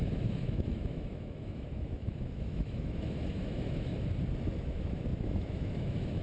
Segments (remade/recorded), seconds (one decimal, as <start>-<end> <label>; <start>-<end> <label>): 0.0-3.9 remade; 3.9-4.6 recorded; 4.6-6.2 remade